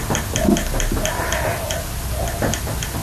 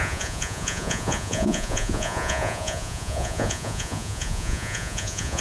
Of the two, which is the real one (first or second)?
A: first